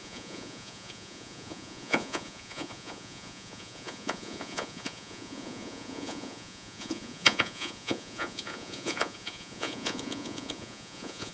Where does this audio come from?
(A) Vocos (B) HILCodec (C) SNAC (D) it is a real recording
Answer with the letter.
A